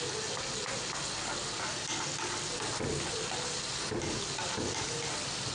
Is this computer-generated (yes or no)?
no